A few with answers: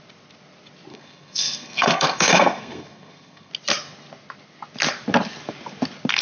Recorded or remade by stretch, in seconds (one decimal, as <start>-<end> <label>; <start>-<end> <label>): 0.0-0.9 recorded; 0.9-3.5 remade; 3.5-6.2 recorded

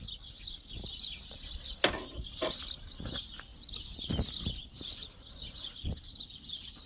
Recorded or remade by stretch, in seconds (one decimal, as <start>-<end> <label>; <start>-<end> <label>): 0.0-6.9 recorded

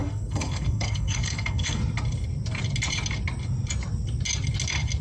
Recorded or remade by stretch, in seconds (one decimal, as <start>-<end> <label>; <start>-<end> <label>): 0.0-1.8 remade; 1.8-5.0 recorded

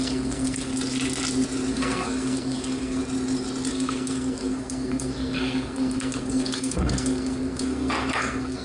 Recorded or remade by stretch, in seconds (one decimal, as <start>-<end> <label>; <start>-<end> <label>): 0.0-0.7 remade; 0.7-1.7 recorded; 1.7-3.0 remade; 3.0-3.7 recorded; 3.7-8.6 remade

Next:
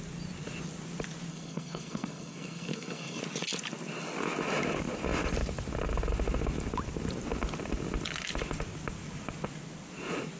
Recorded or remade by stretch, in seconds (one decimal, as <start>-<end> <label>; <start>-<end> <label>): 0.0-1.3 recorded; 1.3-3.2 remade; 3.2-10.4 recorded

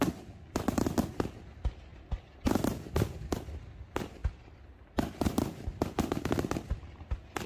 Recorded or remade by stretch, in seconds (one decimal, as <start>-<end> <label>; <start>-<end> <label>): 0.0-7.5 recorded

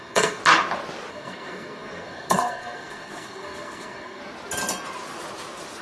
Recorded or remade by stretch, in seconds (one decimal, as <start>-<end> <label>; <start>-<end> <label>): 0.0-0.4 remade; 0.4-1.1 recorded; 1.1-4.2 remade; 4.2-5.8 recorded